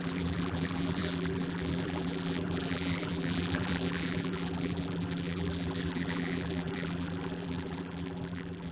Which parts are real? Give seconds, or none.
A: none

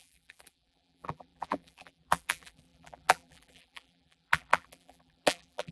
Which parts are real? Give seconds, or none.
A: none